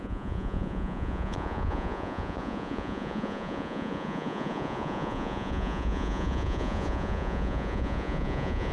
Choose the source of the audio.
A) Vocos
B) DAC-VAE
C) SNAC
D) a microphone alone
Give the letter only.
A